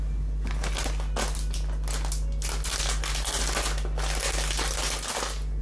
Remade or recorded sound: recorded